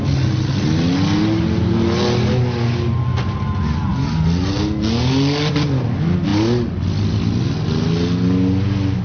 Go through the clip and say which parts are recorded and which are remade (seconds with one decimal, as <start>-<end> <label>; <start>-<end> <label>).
0.0-9.0 recorded